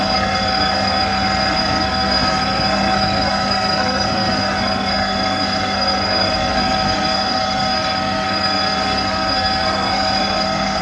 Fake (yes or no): yes